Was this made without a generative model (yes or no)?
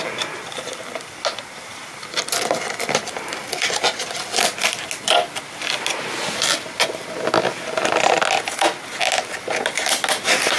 yes